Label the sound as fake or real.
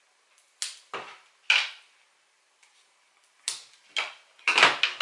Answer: real